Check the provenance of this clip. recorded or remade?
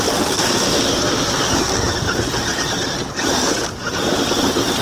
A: recorded